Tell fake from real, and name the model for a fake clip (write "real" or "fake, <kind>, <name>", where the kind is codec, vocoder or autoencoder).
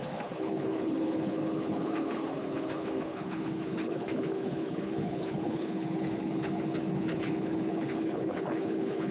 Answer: fake, codec, HILCodec